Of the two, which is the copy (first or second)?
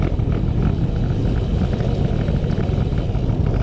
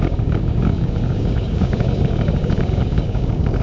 second